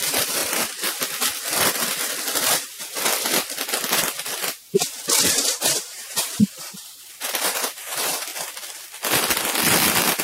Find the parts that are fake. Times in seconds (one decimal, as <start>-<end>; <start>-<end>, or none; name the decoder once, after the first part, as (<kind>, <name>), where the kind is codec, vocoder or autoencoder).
0.0-0.4 (vocoder, BigVGAN v2); 5.1-8.3